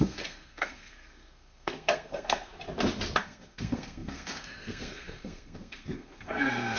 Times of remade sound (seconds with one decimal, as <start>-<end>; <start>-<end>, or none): 0.0-2.5; 3.2-6.8

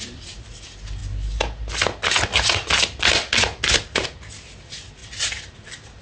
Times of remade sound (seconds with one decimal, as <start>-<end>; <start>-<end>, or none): none

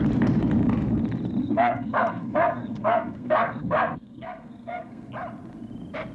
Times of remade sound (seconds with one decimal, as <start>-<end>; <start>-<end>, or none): 1.4-5.1